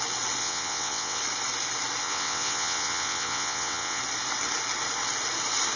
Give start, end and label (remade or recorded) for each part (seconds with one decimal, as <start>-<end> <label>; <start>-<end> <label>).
0.0-0.4 recorded; 0.4-1.2 remade; 1.2-2.0 recorded; 2.0-4.0 remade; 4.0-5.8 recorded